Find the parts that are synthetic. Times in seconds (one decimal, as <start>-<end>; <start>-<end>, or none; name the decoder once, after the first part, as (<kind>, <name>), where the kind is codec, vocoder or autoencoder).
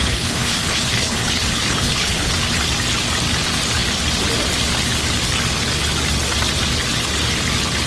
0.0-2.3 (codec, HILCodec)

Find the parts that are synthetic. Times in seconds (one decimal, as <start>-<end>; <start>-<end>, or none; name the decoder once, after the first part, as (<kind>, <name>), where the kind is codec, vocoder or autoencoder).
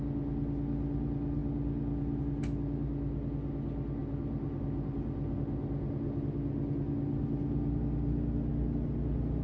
none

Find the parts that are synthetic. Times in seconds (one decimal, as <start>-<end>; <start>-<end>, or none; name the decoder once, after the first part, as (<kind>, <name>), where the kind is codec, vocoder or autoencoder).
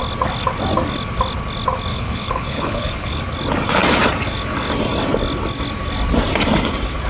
1.9-3.2 (codec, HILCodec)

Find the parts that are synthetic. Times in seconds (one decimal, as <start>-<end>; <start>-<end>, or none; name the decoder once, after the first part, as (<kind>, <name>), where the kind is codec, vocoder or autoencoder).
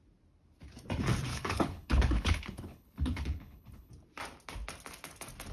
1.3-3.9 (codec, HILCodec)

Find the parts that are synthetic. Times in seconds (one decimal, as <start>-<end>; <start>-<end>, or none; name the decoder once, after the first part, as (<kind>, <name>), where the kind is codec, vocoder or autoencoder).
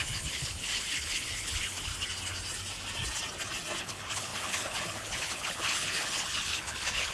0.0-1.9 (codec, HILCodec); 3.8-7.1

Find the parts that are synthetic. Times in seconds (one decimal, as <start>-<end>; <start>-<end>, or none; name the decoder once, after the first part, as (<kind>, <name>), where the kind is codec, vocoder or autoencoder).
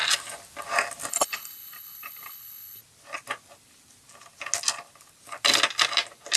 1.1-2.8 (codec, HILCodec)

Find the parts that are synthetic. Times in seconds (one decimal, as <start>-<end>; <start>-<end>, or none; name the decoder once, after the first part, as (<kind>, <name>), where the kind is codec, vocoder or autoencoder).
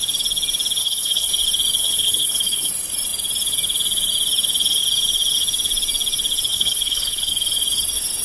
0.8-1.3 (codec, HILCodec); 1.8-2.7; 6.5-7.3